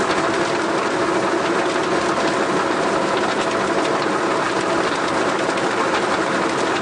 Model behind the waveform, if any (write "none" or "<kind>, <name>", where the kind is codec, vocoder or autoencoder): none